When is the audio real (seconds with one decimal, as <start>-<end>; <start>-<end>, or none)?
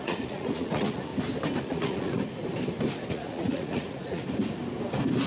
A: 1.1-1.6; 2.2-3.1; 4.2-5.3